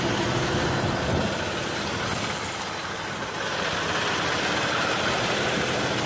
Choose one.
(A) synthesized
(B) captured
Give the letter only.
B